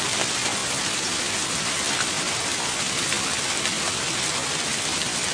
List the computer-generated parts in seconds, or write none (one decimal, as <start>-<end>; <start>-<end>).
0.6-3.4